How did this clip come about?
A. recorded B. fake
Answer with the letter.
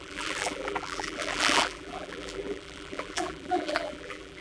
B